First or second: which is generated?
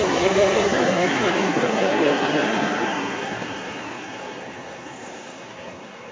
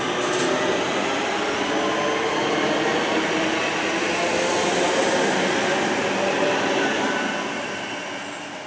first